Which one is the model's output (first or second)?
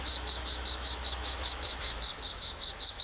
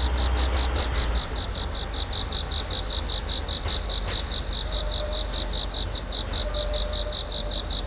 first